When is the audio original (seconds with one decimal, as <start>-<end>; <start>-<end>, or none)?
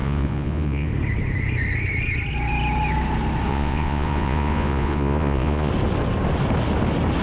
0.9-3.5; 5.7-7.2